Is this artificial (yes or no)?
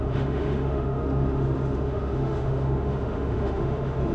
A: yes